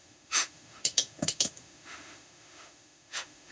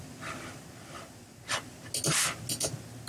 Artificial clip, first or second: first